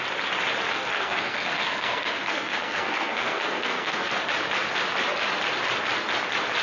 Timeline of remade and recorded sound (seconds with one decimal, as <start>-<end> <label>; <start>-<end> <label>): 0.0-0.7 recorded; 0.7-4.1 remade; 4.1-6.6 recorded